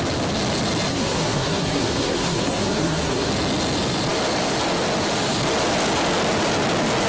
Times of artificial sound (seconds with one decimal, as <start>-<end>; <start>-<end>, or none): 0.9-3.3